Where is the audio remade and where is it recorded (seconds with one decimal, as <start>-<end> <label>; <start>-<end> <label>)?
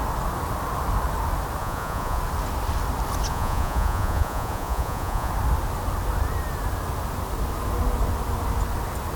0.0-1.6 recorded; 1.6-2.2 remade; 2.2-3.3 recorded; 3.3-5.3 remade; 5.3-9.2 recorded